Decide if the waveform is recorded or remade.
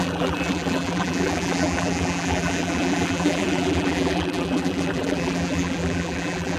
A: remade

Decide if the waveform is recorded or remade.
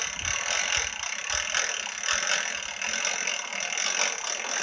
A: recorded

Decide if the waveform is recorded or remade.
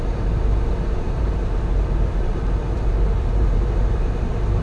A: remade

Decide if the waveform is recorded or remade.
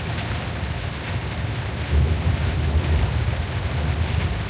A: recorded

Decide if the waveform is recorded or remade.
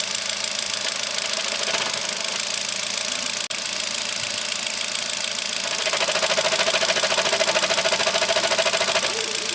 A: recorded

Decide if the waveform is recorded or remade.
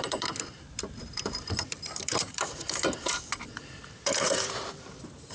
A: remade